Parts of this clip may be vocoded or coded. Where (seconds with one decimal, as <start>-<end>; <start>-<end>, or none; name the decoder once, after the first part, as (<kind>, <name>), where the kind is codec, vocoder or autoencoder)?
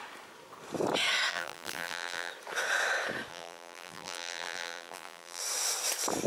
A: 1.3-2.3 (vocoder, BigVGAN v2); 3.3-5.4